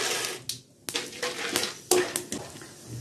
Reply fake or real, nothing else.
real